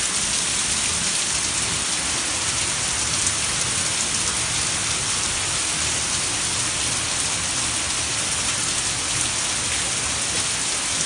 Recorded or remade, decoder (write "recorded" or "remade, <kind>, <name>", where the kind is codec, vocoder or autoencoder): recorded